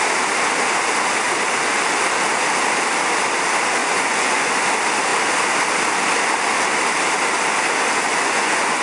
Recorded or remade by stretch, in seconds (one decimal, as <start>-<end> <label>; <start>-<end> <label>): 0.0-3.8 recorded; 3.8-4.5 remade; 4.5-8.1 recorded; 8.1-8.8 remade

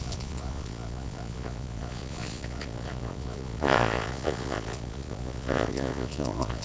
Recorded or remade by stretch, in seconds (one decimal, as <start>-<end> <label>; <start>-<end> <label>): 0.0-6.6 remade

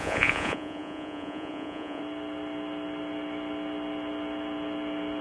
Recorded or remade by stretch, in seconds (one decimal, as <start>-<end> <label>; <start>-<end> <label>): 0.0-2.0 remade; 2.0-5.2 recorded

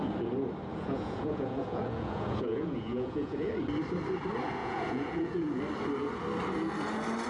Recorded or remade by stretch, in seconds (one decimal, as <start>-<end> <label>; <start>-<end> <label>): 0.0-0.7 recorded; 0.7-3.5 remade; 3.5-4.6 recorded; 4.6-5.6 remade; 5.6-7.3 recorded

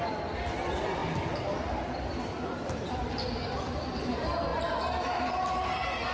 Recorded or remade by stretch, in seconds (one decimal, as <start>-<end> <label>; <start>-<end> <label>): 0.0-6.1 recorded